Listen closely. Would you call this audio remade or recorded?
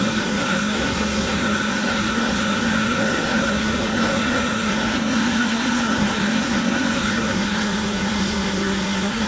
remade